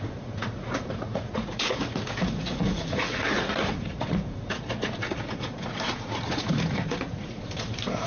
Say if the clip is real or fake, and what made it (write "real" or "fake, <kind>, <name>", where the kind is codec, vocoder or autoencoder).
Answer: fake, vocoder, Vocos